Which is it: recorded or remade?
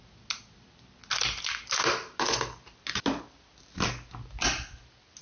recorded